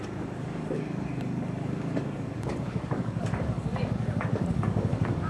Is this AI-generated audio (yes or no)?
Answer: yes